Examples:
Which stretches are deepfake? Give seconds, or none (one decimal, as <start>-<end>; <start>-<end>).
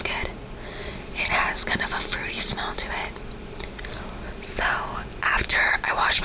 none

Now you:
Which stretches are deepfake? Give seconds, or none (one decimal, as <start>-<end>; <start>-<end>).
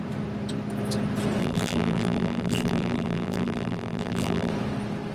1.4-4.5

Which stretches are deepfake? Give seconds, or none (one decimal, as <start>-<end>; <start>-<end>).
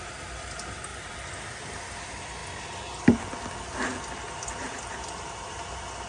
0.9-1.8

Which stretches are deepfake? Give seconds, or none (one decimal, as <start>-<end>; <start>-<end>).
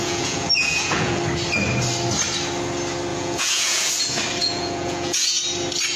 0.0-1.2; 3.1-3.9; 4.4-5.4